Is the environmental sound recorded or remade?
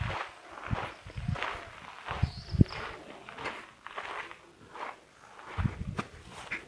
recorded